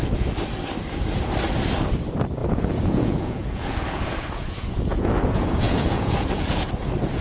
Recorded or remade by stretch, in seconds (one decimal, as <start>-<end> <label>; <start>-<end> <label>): 0.0-2.4 recorded; 2.4-6.7 remade; 6.7-7.2 recorded